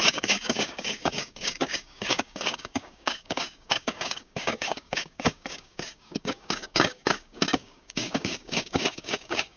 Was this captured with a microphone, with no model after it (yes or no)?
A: no